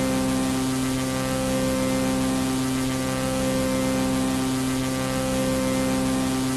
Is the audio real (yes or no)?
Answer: yes